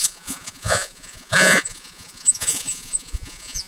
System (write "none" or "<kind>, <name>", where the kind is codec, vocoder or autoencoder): vocoder, Vocos